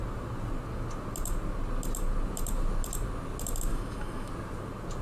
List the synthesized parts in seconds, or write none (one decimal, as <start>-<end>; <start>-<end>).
3.7-4.3